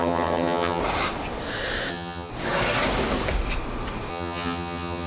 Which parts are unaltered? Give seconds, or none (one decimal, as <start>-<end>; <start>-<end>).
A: 0.8-1.9; 2.3-4.1